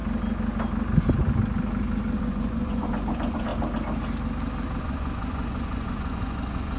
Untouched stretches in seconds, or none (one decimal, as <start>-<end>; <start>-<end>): 0.0-2.2; 3.5-4.8